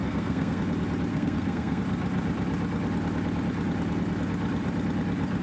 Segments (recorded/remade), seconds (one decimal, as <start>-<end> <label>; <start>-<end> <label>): 0.0-0.6 remade; 0.6-1.1 recorded; 1.1-1.8 remade; 1.8-5.4 recorded